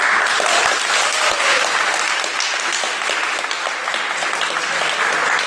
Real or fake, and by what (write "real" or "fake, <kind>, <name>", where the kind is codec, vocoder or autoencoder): real